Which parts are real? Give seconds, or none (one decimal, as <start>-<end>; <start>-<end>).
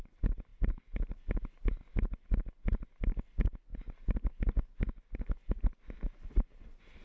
0.0-7.0